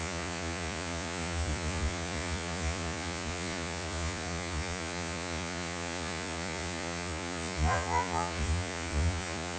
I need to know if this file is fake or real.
fake